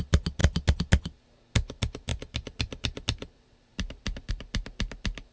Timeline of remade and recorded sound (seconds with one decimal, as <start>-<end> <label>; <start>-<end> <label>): 0.0-2.1 recorded; 2.1-4.3 remade; 4.3-5.3 recorded